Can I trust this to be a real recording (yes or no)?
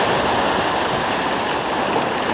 yes